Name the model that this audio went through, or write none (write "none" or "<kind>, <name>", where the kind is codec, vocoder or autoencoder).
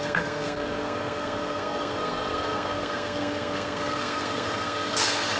codec, SNAC